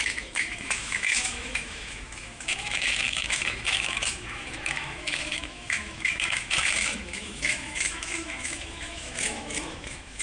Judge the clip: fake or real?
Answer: fake